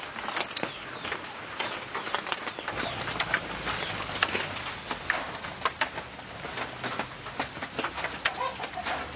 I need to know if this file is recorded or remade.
recorded